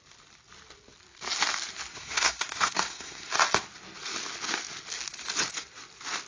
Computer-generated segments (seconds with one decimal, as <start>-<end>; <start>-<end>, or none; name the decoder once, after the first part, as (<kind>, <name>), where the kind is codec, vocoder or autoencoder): 1.9-3.3 (codec, SNAC)